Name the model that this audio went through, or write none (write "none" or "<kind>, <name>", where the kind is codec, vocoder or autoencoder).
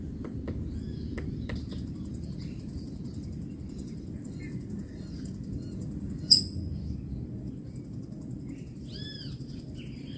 vocoder, BigVGAN v2